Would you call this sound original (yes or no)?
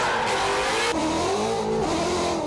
yes